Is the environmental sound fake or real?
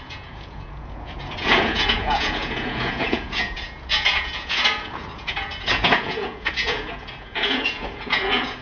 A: fake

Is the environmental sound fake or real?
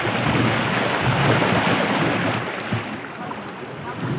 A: real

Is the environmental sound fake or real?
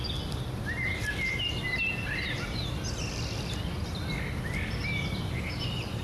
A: real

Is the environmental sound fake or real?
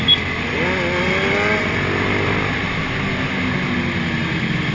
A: real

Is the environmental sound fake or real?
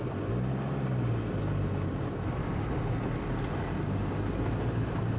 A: real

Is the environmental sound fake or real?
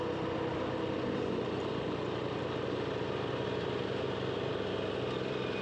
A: real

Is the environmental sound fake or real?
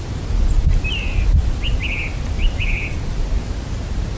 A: real